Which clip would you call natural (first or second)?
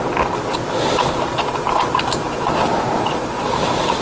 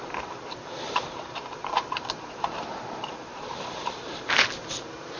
first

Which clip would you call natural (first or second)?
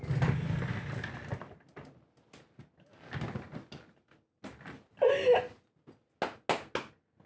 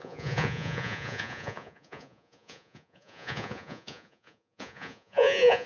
first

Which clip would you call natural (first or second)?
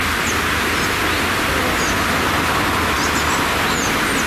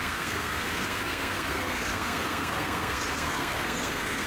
first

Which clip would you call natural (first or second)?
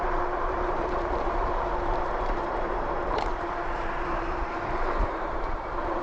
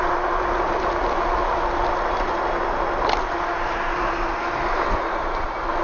second